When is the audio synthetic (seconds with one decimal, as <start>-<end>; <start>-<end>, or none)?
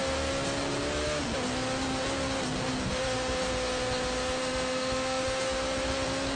4.4-5.2